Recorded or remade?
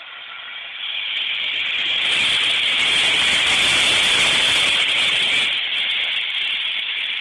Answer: recorded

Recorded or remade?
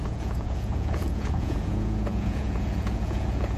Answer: remade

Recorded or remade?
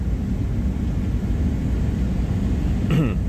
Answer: recorded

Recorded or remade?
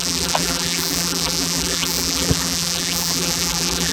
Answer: remade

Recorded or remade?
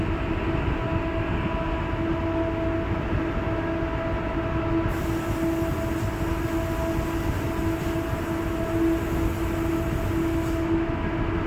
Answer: recorded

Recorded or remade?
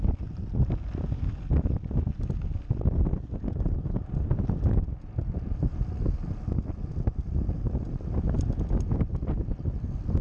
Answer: recorded